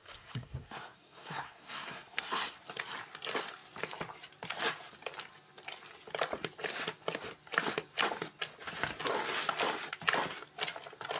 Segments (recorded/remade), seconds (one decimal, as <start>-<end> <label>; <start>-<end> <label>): 0.0-2.6 remade; 2.6-11.2 recorded